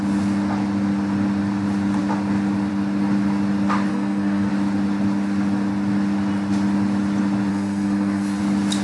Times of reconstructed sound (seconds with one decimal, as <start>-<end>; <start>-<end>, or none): 3.9-4.5; 7.5-8.4